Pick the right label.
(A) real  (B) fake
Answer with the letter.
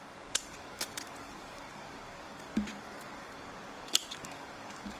B